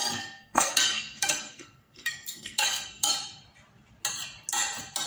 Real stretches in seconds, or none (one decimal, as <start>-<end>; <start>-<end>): 3.1-5.1